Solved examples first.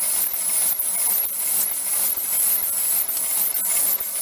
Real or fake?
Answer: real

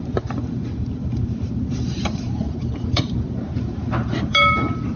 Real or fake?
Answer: fake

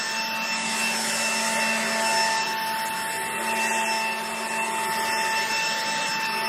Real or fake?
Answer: real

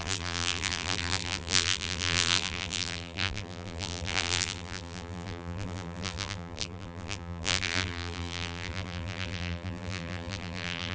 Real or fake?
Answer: fake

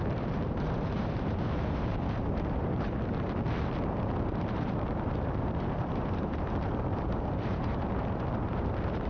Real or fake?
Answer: fake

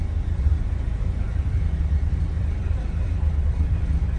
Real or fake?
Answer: fake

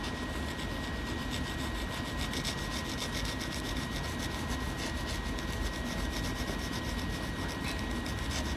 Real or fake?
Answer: real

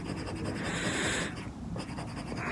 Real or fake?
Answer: real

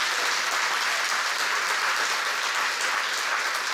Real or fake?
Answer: real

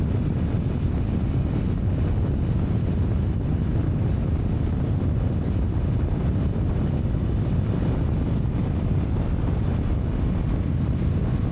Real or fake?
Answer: real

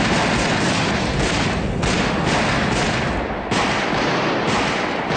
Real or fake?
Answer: fake